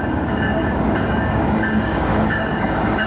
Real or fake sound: fake